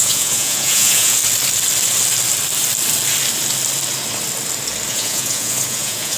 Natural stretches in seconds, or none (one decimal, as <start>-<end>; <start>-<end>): 1.2-4.9